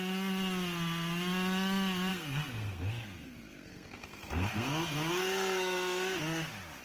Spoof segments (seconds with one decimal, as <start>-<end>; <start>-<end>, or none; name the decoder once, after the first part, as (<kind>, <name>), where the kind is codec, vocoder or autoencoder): 2.1-6.2 (codec, SNAC)